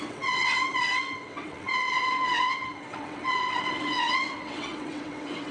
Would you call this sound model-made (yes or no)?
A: yes